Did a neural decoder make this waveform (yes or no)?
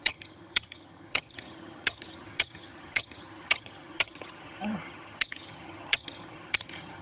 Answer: yes